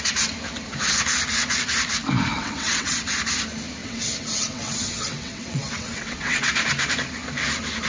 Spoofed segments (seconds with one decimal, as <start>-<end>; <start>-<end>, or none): 2.3-3.1; 3.8-6.5